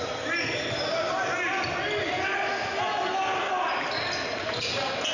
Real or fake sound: real